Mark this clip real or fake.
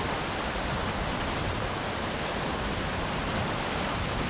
real